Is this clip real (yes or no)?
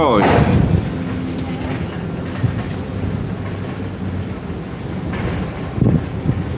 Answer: yes